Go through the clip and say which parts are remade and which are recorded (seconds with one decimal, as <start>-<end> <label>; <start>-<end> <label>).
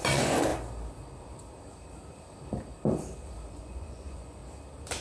0.0-0.5 remade; 0.5-3.5 recorded; 3.5-4.4 remade; 4.4-5.0 recorded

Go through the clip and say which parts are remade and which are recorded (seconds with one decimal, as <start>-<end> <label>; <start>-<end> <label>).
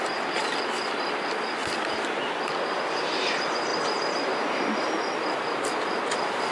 0.0-3.7 recorded; 3.7-4.3 remade; 4.3-6.5 recorded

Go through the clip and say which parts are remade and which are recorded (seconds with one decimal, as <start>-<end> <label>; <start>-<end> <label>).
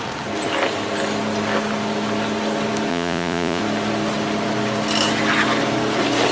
0.0-2.9 recorded; 2.9-3.6 remade; 3.6-6.3 recorded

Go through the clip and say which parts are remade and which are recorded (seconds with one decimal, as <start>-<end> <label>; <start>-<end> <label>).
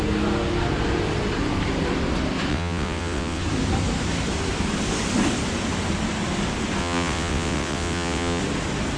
0.0-2.5 recorded; 2.5-3.4 remade; 3.4-6.8 recorded; 6.8-8.4 remade; 8.4-9.0 recorded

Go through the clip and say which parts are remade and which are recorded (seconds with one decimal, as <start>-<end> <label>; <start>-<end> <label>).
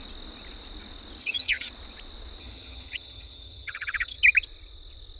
0.0-1.2 recorded; 1.2-1.7 remade; 1.7-2.4 recorded; 2.4-4.2 remade; 4.2-5.2 recorded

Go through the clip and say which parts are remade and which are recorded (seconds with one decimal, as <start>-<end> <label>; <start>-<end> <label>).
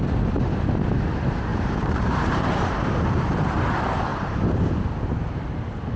0.0-1.5 recorded; 1.5-3.6 remade; 3.6-4.1 recorded; 4.1-5.5 remade; 5.5-6.0 recorded